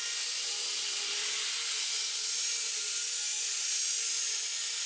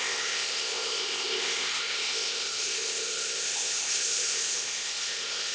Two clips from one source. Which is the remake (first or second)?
second